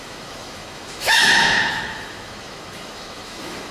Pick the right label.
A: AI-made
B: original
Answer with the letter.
A